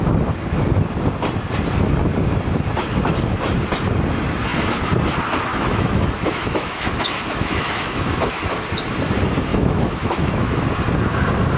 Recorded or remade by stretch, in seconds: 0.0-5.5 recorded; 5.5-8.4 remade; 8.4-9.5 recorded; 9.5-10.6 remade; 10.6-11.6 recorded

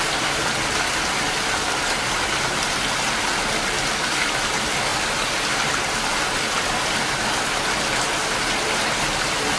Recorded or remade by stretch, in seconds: 0.0-9.6 recorded